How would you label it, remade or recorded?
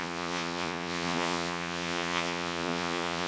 remade